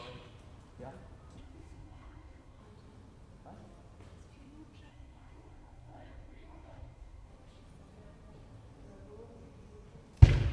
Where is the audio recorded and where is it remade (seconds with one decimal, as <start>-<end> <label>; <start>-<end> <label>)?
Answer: 0.0-1.4 recorded; 1.4-2.6 remade; 2.6-4.9 recorded; 4.9-7.3 remade; 7.3-10.5 recorded